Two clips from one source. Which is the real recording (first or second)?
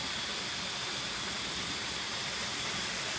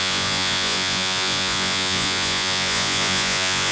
first